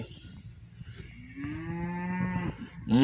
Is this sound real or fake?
real